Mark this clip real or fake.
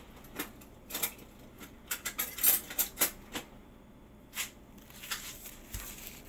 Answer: real